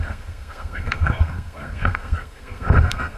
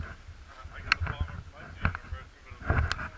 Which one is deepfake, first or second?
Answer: first